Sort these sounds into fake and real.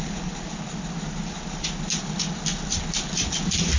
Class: real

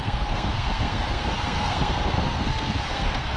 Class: fake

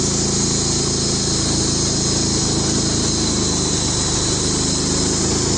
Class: real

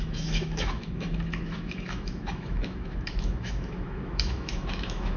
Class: fake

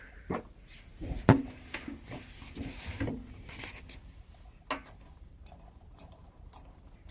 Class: real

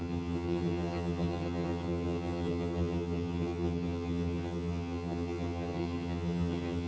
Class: fake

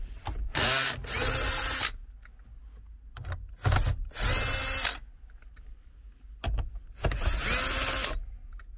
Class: real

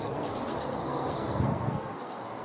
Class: fake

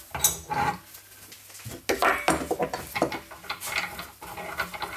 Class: real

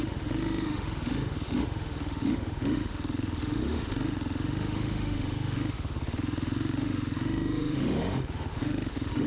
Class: fake